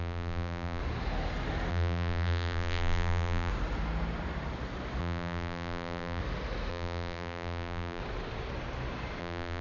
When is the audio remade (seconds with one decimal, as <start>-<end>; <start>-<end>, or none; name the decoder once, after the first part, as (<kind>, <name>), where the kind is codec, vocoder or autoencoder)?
0.0-0.8 (vocoder, BigVGAN v2); 1.7-3.5; 5.0-6.2; 6.7-8.0; 9.2-9.6